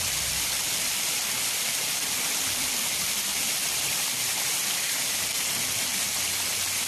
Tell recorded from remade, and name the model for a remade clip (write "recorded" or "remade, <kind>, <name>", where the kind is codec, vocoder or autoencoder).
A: remade, vocoder, BigVGAN v2